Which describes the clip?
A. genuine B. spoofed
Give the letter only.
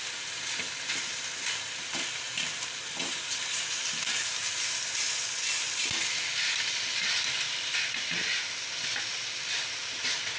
A